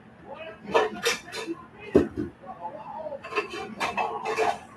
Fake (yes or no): no